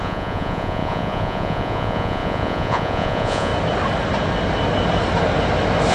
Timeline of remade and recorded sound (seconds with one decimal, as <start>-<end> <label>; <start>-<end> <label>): 0.0-3.5 remade; 3.5-5.9 recorded